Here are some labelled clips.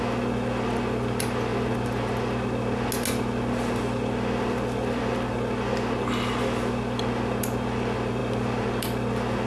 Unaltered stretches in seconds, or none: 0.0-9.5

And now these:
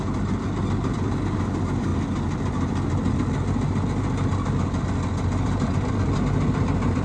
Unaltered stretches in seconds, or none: 0.0-7.0